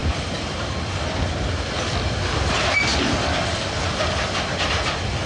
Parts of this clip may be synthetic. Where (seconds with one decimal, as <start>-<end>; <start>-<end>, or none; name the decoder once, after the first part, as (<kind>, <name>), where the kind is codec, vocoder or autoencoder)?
none